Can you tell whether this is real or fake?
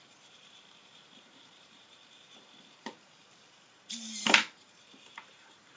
fake